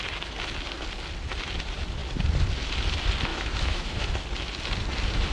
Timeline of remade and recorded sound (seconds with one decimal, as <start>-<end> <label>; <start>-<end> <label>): 0.0-3.3 recorded; 3.3-4.1 remade; 4.1-5.3 recorded